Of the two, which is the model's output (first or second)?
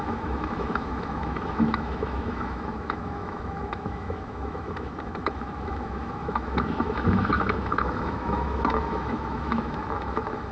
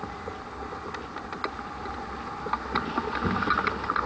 first